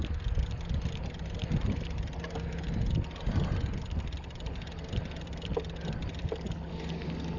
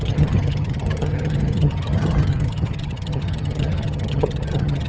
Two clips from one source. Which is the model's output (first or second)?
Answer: second